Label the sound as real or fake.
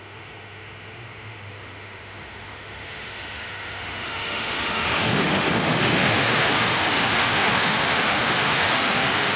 fake